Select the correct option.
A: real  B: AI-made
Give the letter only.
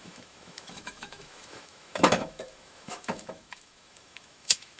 B